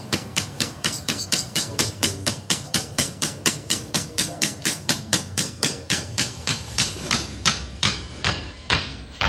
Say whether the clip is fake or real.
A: fake